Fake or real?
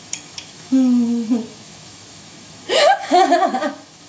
fake